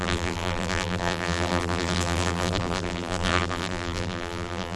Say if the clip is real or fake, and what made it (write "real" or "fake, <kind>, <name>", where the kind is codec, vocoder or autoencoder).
fake, vocoder, BigVGAN v2